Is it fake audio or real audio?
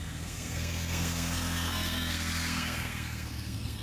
fake